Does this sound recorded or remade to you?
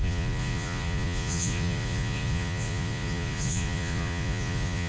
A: remade